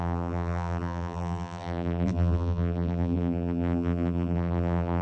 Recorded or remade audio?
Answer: remade